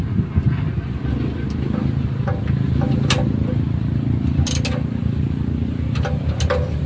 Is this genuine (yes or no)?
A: yes